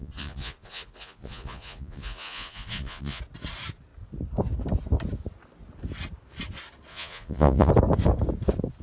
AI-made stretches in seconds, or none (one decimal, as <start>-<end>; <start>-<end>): 0.0-3.2; 6.9-7.7